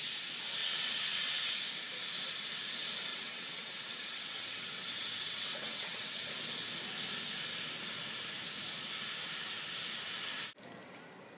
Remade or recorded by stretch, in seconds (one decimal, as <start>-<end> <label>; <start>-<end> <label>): 0.0-0.6 recorded; 0.6-1.5 remade; 1.5-3.1 recorded; 3.1-6.3 remade; 6.3-11.4 recorded